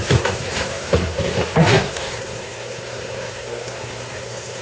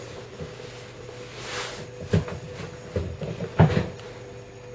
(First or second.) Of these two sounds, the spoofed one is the first